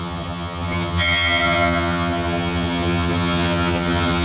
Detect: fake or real fake